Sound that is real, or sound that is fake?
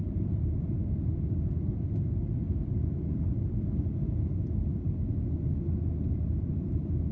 real